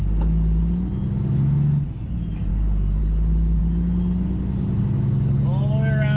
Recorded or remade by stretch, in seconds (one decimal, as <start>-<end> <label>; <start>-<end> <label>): 0.0-6.2 recorded